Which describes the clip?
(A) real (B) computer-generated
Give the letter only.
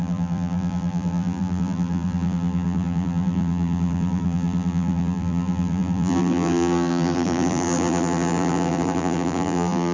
B